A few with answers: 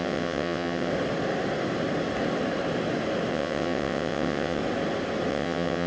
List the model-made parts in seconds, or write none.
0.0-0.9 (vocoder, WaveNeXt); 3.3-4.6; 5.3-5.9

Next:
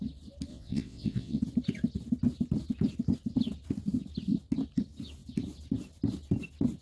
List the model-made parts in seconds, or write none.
0.5-1.4 (vocoder, WaveNeXt)

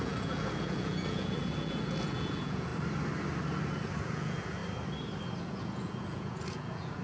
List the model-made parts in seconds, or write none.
0.0-2.7 (vocoder, Vocos); 4.0-4.6; 5.5-7.0

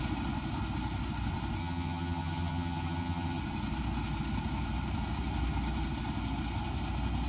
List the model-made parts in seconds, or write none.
1.6-3.4 (vocoder, HiFi-GAN)

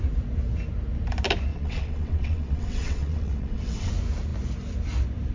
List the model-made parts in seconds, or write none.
1.5-3.9 (vocoder, WaveNeXt)

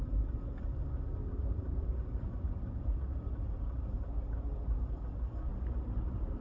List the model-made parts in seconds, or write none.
1.1-4.5 (vocoder, BigVGAN v2); 5.5-6.4

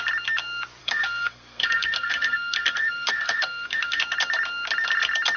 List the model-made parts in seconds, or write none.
0.8-4.0 (codec, SNAC)

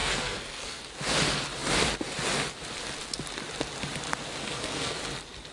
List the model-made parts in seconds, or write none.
0.0-0.8 (codec, SNAC); 4.4-5.0